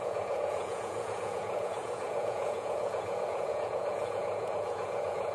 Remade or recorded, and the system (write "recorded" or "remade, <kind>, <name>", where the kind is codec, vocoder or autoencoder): remade, vocoder, Vocos